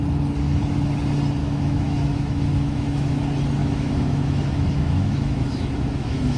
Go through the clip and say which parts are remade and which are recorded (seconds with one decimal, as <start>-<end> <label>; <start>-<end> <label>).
0.0-1.4 recorded; 1.4-3.2 remade; 3.2-3.6 recorded; 3.6-6.4 remade